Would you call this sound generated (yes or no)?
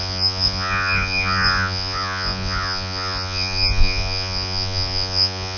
yes